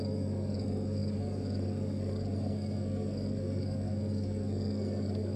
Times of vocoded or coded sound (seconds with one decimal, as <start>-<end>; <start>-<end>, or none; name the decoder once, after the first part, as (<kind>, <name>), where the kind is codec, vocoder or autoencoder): 0.0-5.4 (codec, SNAC)